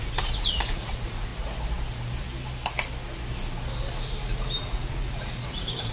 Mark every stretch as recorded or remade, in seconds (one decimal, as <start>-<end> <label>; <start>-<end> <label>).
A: 0.0-1.3 remade; 1.3-4.6 recorded; 4.6-5.9 remade